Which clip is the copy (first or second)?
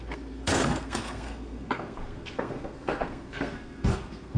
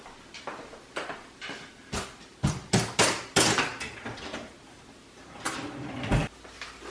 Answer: first